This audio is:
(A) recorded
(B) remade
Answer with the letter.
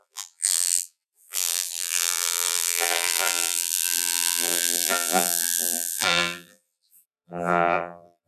B